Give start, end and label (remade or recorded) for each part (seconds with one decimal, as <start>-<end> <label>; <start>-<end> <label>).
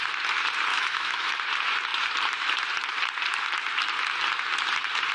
0.0-0.7 recorded; 0.7-1.3 remade; 1.3-5.1 recorded